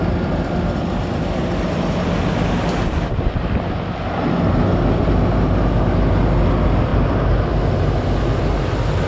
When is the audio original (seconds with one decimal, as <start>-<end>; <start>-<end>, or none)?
0.0-9.1